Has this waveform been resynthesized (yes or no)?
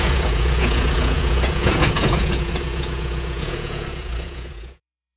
yes